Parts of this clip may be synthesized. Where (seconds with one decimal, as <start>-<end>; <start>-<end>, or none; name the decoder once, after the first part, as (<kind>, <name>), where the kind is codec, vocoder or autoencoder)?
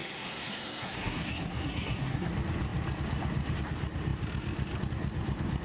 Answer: 0.0-2.3 (codec, SNAC)